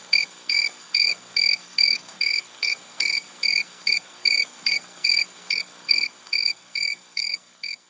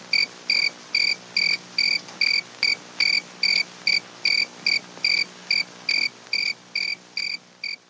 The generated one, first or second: first